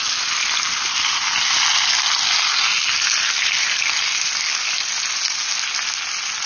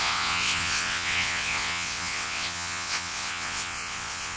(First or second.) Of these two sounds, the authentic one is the first